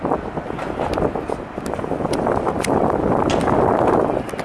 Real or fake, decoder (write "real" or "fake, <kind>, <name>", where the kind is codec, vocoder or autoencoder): real